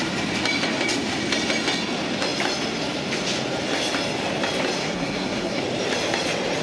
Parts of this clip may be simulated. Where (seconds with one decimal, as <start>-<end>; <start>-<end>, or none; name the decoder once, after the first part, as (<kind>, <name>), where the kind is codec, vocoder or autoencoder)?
4.8-5.6 (codec, SNAC)